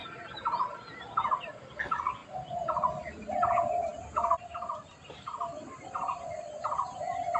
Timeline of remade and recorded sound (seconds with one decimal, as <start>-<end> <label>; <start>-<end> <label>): 0.0-7.4 recorded